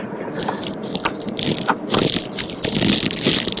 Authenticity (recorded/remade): recorded